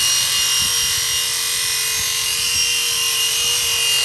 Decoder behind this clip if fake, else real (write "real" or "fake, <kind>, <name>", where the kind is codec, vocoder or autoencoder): real